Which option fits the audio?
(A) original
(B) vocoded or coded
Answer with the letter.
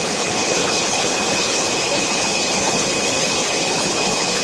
B